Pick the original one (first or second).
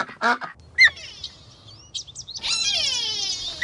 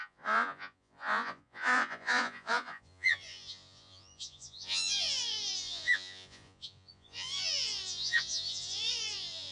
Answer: first